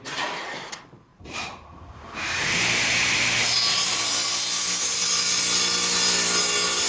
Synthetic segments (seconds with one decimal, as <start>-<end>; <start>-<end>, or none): 0.0-3.6